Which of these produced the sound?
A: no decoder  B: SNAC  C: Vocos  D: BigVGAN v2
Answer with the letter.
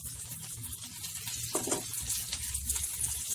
A